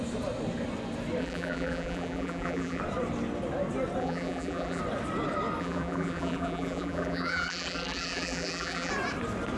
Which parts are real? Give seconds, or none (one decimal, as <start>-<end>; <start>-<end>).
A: 0.0-1.2; 2.8-4.0; 4.8-5.6; 8.9-9.6